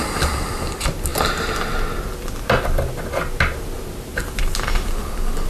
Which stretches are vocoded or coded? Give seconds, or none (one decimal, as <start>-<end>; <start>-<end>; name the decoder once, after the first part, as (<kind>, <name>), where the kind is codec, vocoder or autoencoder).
none